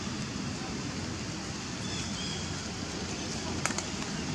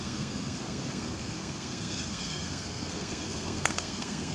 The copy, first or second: second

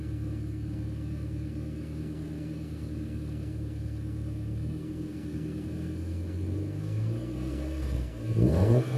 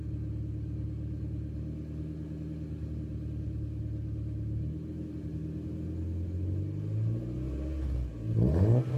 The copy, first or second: first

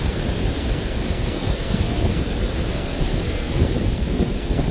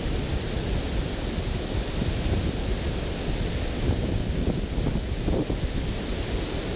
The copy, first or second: first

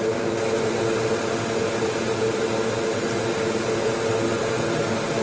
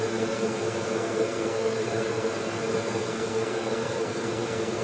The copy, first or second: second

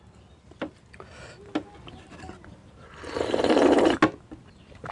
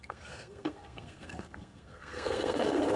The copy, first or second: second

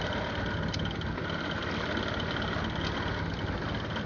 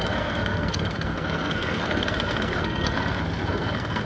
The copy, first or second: second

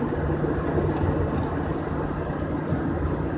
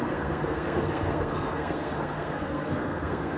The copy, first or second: second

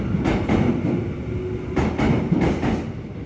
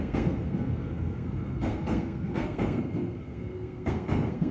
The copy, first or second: second